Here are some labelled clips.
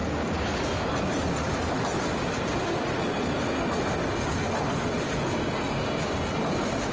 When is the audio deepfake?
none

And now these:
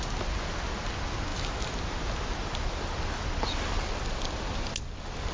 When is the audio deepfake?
none

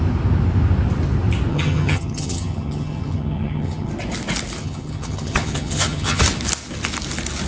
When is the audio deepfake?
1.5-3.9 (vocoder, HiFi-GAN); 4.6-6.2

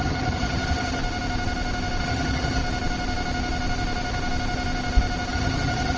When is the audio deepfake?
0.0-1.0 (vocoder, HiFi-GAN); 2.0-2.6; 5.3-6.0

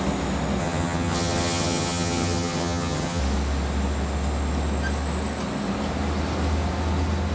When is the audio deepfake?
0.6-3.2 (vocoder, HiFi-GAN)

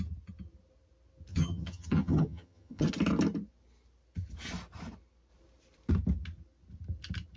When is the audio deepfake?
1.3-2.9 (vocoder, HiFi-GAN)